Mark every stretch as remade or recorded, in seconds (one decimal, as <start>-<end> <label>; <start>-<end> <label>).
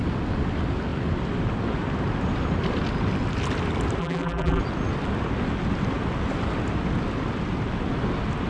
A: 0.0-4.0 recorded; 4.0-4.6 remade; 4.6-8.5 recorded